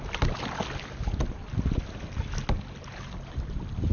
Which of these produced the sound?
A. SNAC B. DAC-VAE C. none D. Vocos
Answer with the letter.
C